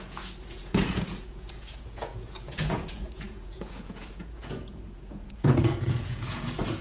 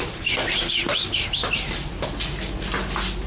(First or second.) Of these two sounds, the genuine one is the second